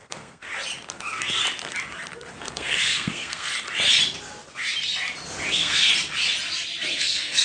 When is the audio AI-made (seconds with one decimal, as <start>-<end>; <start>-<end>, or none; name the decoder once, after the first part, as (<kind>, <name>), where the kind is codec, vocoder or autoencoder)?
0.0-0.5 (codec, SNAC); 1.0-1.4; 2.4-3.5; 5.5-5.9; 6.9-7.4